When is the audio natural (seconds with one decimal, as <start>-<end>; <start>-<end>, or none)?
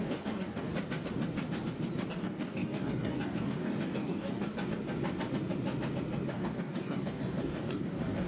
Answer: 0.7-2.1; 4.5-6.3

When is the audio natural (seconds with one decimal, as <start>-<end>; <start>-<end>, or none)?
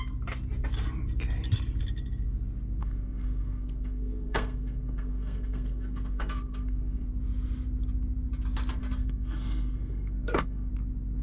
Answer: 0.0-2.8; 7.1-8.8; 10.7-11.2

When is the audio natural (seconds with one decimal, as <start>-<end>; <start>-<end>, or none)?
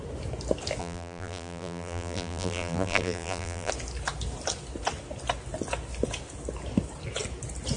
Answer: 0.0-0.8; 3.7-7.8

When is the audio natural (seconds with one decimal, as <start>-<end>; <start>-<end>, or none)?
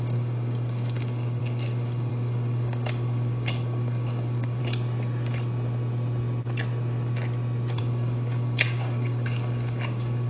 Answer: 4.6-7.8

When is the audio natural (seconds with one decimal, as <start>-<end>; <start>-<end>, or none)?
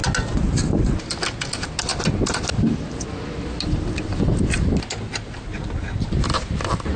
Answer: 0.0-7.0